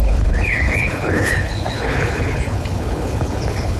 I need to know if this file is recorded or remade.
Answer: remade